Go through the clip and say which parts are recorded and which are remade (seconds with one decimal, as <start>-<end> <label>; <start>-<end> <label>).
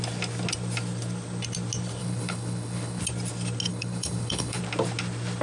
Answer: 0.0-2.0 recorded; 2.0-3.0 remade; 3.0-3.7 recorded; 3.7-4.6 remade; 4.6-5.4 recorded